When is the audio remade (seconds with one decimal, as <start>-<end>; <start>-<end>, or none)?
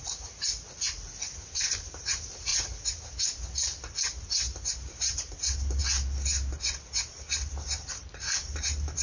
0.0-0.5; 1.8-2.5; 4.2-5.8; 7.5-9.0